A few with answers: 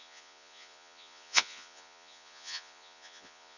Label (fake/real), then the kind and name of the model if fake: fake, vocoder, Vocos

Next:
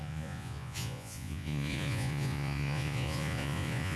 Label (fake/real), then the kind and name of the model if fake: fake, vocoder, Vocos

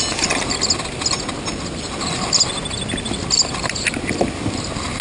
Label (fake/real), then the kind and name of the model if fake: real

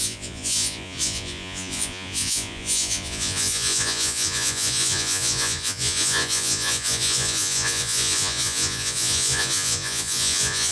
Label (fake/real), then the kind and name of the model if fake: fake, vocoder, Vocos